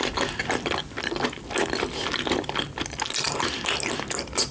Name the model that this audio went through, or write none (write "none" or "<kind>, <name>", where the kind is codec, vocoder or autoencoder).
none